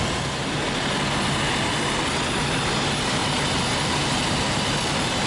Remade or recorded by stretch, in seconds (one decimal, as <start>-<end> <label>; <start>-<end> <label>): 0.0-5.3 recorded